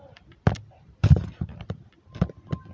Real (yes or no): yes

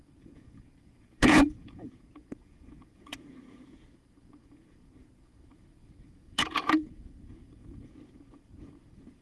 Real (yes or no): no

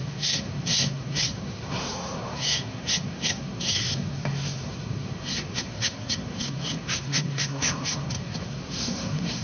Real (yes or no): no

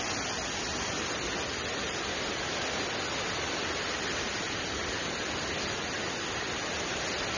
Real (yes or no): yes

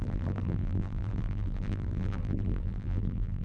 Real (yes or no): no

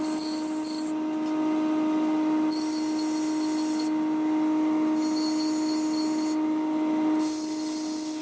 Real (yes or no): yes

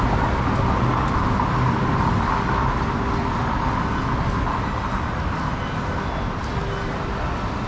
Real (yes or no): yes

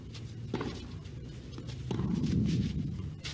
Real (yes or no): yes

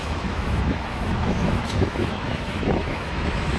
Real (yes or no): no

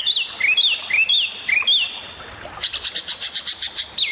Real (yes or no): yes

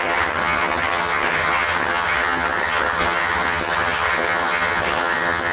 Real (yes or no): no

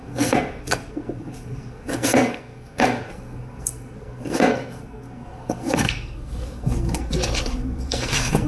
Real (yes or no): no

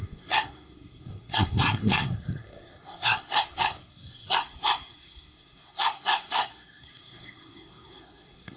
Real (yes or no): no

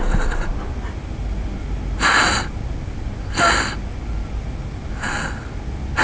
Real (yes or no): yes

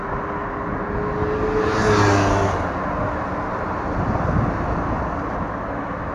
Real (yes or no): yes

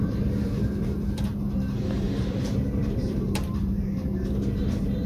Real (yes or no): no